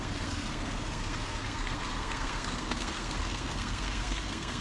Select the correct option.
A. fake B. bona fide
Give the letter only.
A